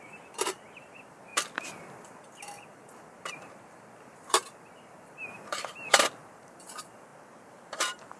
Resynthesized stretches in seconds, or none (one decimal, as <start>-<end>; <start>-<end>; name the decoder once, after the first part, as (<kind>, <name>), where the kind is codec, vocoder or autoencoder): 0.0-8.2 (vocoder, BigVGAN v2)